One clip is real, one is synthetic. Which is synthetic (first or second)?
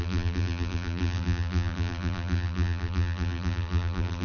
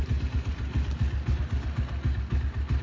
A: first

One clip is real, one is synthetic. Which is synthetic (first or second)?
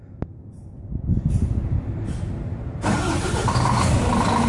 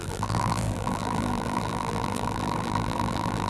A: second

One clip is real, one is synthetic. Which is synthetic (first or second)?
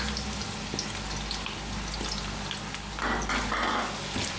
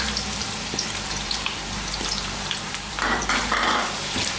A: second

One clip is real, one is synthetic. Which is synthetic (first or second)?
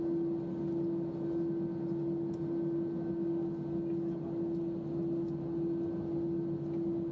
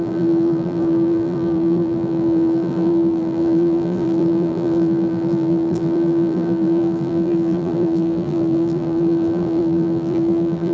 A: second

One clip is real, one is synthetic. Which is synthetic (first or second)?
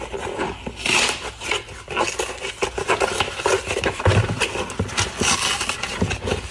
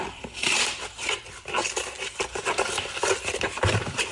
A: second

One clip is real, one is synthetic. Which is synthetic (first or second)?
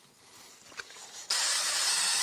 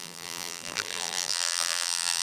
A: second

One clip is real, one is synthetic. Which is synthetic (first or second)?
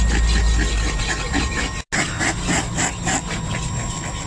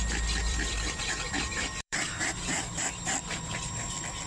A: second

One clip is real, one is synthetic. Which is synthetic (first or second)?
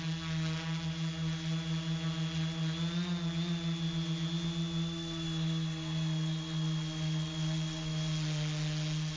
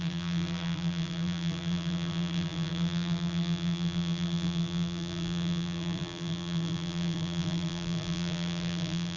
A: second